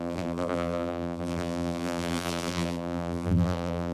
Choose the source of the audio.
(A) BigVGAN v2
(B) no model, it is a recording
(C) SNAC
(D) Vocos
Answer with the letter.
A